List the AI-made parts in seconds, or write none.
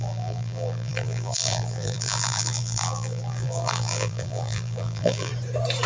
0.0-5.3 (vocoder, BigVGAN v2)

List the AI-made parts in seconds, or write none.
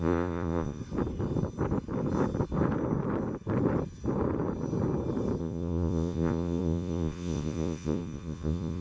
0.0-0.8 (vocoder, Vocos); 5.4-8.8